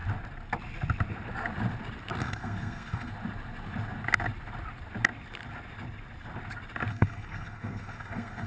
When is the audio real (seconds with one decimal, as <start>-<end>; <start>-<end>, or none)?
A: 0.0-2.2; 3.1-6.9